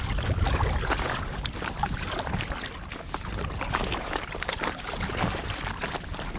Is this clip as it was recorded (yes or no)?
yes